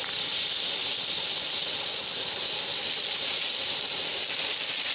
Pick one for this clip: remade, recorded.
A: recorded